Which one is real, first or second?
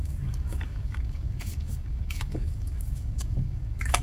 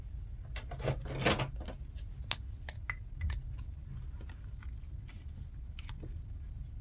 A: second